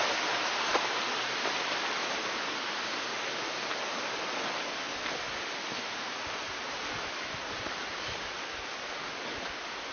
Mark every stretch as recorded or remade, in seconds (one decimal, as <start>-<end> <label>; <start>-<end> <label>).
0.0-4.9 recorded; 4.9-8.4 remade; 8.4-9.9 recorded